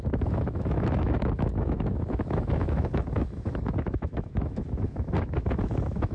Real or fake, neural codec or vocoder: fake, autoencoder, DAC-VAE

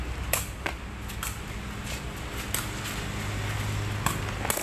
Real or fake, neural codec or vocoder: real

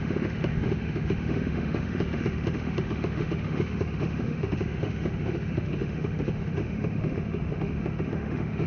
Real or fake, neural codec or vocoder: fake, autoencoder, DAC-VAE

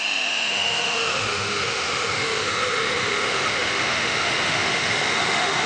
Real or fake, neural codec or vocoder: fake, autoencoder, DAC-VAE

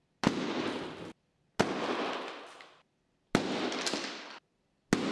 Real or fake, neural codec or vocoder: real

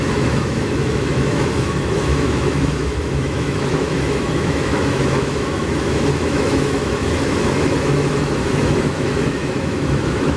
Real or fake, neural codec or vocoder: fake, autoencoder, DAC-VAE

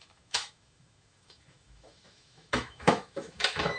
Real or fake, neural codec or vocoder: fake, autoencoder, DAC-VAE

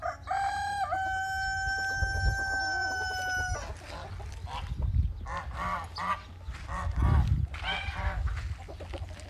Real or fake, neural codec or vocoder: real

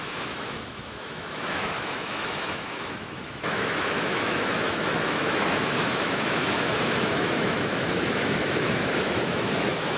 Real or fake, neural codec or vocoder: fake, autoencoder, DAC-VAE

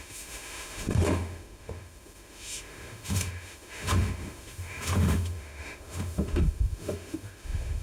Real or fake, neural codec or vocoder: fake, autoencoder, DAC-VAE